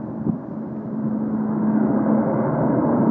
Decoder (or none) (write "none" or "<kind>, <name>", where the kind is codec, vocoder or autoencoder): none